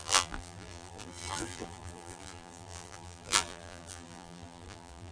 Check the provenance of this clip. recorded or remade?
remade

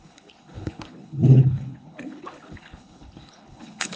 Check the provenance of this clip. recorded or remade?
remade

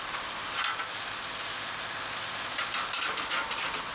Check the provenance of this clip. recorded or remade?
recorded